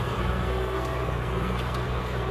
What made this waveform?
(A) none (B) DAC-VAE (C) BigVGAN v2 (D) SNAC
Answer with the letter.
D